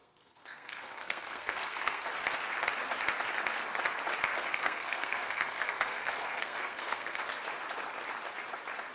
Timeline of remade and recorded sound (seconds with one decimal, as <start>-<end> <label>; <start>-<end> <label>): 0.0-2.1 remade; 2.1-4.3 recorded; 4.3-7.2 remade; 7.2-8.9 recorded